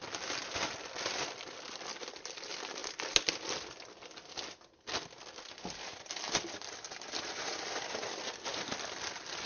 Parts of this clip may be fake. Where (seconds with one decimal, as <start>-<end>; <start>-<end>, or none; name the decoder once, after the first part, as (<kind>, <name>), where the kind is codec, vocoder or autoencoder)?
none